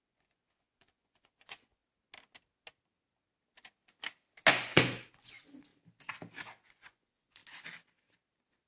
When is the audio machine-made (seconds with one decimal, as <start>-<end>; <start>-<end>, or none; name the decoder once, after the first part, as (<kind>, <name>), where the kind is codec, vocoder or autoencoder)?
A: 0.0-1.8 (vocoder, Vocos); 4.5-5.7; 6.7-7.4

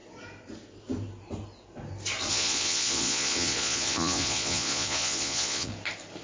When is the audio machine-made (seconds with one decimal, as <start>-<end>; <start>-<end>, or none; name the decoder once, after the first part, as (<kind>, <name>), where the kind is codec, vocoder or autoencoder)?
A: 2.3-5.7 (vocoder, Vocos)

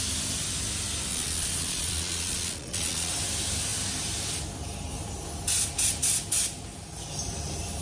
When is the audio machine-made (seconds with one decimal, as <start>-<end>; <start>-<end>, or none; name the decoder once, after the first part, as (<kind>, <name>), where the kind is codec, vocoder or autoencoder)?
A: 1.1-3.1 (vocoder, Vocos)

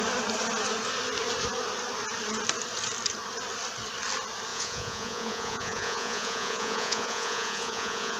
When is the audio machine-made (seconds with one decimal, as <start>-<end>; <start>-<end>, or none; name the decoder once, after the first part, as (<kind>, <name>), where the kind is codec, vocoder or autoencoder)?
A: 4.5-8.2 (vocoder, Vocos)

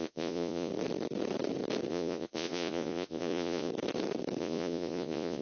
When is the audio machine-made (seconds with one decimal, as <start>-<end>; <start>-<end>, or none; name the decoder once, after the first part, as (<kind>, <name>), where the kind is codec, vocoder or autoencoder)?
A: 0.0-0.7 (vocoder, Vocos); 1.9-3.7; 4.4-5.4

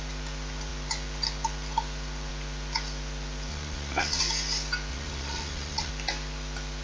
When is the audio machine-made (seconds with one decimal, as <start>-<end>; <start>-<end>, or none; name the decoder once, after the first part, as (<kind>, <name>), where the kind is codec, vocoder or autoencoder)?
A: 3.5-4.2 (vocoder, Vocos); 4.9-5.9

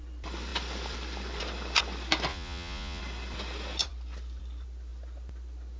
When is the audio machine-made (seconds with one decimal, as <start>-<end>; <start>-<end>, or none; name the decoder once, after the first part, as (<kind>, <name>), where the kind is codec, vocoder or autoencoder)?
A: 2.3-3.0 (vocoder, Vocos)

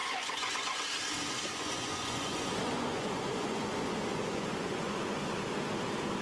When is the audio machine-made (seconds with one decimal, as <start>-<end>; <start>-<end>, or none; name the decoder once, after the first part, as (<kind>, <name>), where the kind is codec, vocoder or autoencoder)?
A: 0.0-0.8 (vocoder, Vocos); 1.5-5.2